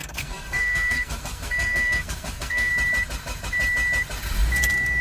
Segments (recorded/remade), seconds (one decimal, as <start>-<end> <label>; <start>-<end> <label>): 0.0-2.7 remade; 2.7-5.0 recorded